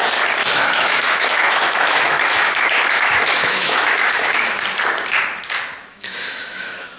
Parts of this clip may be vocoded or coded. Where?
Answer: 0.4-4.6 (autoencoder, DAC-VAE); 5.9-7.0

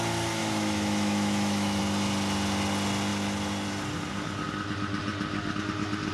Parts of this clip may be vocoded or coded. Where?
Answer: 0.4-1.8 (autoencoder, DAC-VAE)